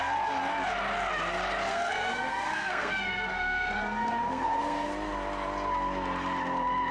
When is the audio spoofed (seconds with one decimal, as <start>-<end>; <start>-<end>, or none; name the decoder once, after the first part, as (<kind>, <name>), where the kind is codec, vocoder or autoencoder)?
1.7-4.9 (codec, SNAC)